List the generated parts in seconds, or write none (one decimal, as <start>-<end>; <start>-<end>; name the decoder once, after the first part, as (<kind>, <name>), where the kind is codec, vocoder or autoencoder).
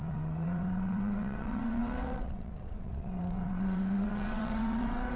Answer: 0.0-5.2 (vocoder, WaveNeXt)